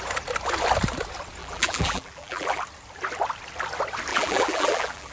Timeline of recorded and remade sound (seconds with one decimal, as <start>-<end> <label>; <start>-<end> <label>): 0.0-1.4 recorded; 1.4-2.6 remade; 2.6-4.1 recorded; 4.1-5.1 remade